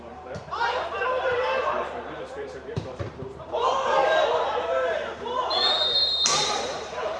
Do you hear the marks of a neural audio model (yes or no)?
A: yes